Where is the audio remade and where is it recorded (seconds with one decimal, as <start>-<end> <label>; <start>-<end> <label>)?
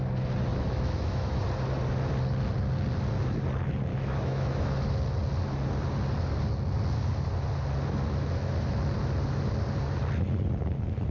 0.0-0.5 recorded; 0.5-1.4 remade; 1.4-3.9 recorded; 3.9-4.7 remade; 4.7-11.1 recorded